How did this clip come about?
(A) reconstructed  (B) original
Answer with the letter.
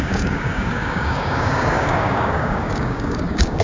A